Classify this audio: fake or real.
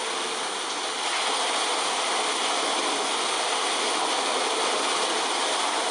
real